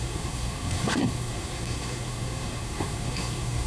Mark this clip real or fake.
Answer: fake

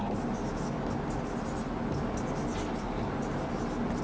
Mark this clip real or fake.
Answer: real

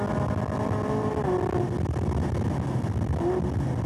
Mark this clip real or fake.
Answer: real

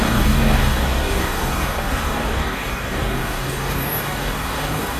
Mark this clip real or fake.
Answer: fake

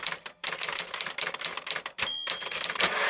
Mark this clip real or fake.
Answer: real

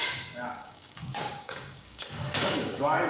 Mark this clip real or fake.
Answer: fake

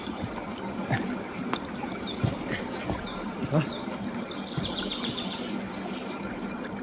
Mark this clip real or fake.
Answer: real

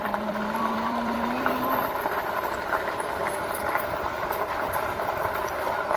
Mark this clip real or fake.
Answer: fake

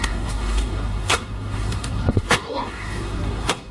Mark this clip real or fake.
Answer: fake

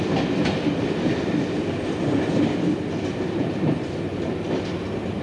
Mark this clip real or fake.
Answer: fake